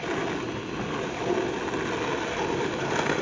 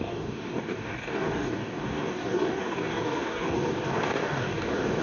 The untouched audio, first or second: first